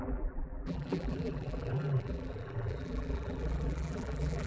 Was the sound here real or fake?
fake